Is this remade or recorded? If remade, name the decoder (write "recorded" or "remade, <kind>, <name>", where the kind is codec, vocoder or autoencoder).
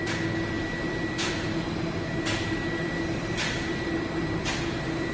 recorded